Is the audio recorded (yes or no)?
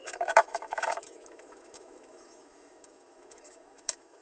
no